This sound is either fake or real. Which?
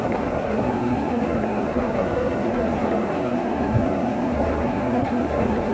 fake